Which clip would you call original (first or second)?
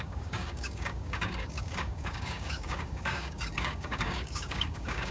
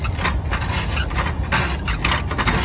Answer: second